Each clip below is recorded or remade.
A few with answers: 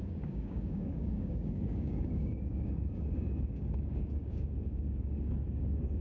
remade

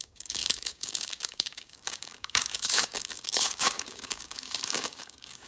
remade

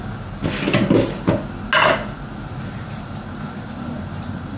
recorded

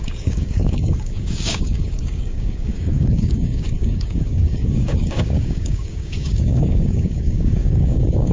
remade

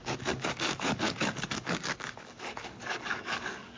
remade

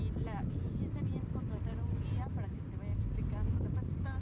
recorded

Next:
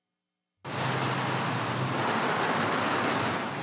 recorded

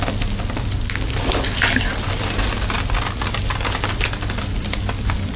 recorded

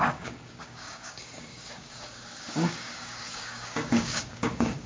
remade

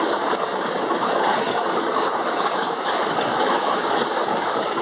remade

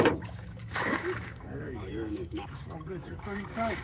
remade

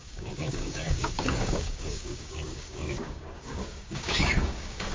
remade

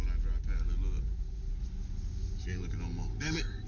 recorded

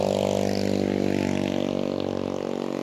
recorded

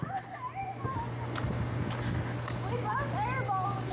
recorded